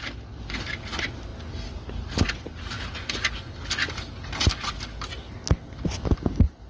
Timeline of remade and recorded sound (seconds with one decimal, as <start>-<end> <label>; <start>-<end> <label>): 0.0-6.7 recorded